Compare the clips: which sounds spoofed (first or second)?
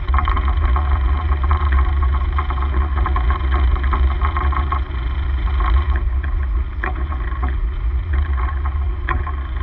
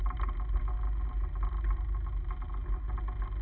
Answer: first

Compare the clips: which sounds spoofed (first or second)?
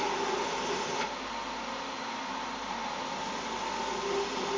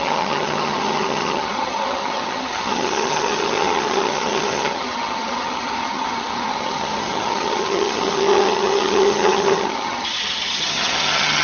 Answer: second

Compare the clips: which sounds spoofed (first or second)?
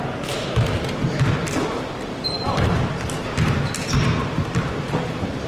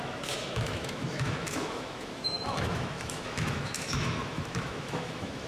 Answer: second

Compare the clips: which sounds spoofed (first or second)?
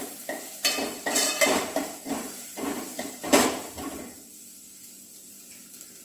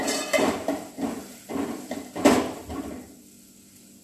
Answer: first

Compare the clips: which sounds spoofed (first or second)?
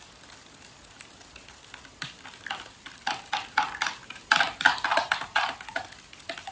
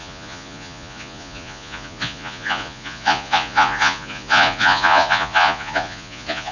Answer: second